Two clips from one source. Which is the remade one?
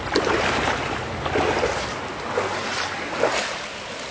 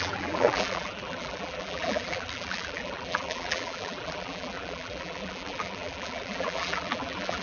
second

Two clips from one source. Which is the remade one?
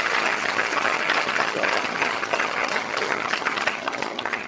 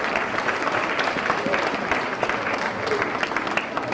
first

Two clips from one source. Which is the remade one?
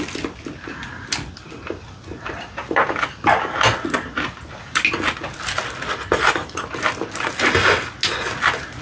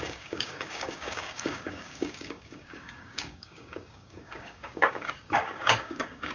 second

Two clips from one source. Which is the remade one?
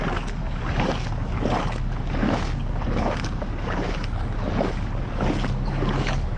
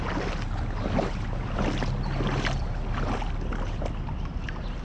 first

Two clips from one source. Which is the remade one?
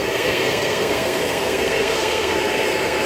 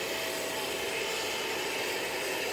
first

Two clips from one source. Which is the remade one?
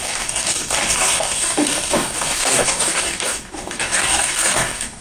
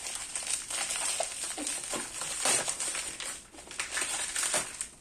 first